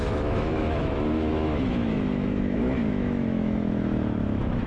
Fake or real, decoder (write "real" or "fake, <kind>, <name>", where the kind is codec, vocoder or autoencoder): fake, autoencoder, DAC-VAE